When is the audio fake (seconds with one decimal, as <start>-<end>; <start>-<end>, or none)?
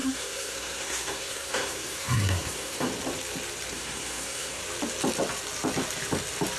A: 0.0-2.9; 3.7-4.6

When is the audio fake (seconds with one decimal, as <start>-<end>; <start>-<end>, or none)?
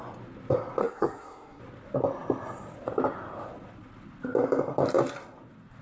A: 0.8-1.6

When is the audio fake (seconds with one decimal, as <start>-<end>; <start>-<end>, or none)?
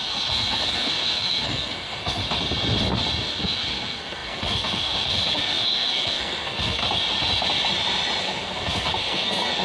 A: 0.0-2.2; 3.2-6.8; 8.2-9.6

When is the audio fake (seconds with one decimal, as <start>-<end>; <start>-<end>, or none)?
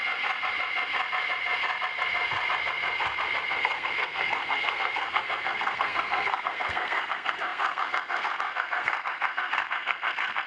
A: 3.6-10.5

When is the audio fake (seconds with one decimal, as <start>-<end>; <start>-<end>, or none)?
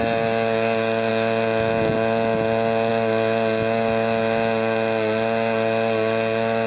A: none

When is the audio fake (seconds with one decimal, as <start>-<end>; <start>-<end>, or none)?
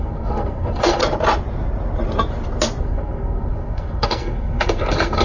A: 0.0-1.0; 2.8-5.2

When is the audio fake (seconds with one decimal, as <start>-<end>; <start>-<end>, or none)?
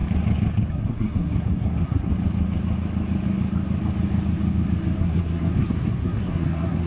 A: 0.7-2.1; 5.0-6.9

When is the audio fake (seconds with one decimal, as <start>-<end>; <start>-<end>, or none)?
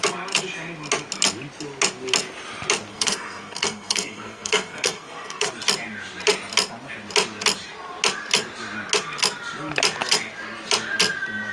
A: 2.9-5.5